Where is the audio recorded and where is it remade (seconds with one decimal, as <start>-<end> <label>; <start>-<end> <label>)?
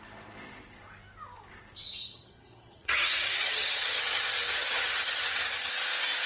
0.0-2.0 recorded; 2.0-5.7 remade; 5.7-6.3 recorded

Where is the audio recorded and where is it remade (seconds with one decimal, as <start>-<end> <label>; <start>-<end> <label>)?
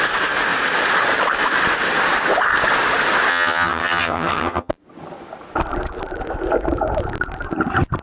0.0-3.3 recorded; 3.3-4.7 remade; 4.7-8.0 recorded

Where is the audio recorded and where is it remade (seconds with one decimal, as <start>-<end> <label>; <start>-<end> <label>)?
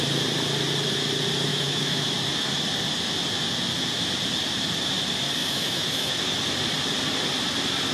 0.0-1.5 recorded; 1.5-2.2 remade; 2.2-5.4 recorded; 5.4-6.1 remade; 6.1-7.9 recorded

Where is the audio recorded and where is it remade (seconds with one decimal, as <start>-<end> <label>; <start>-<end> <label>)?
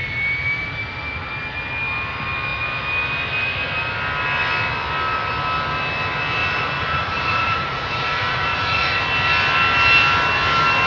0.0-6.4 recorded; 6.4-9.0 remade; 9.0-10.9 recorded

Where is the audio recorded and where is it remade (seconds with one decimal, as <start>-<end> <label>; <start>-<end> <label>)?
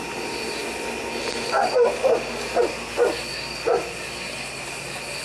0.0-5.2 recorded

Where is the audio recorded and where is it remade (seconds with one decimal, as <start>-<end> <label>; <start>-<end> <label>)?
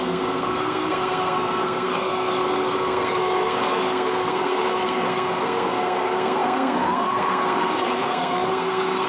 0.0-9.1 remade